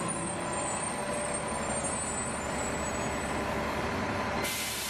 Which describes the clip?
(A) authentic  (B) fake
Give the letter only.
A